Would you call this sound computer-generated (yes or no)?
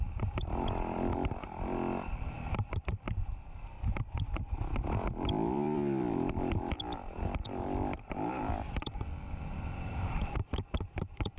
yes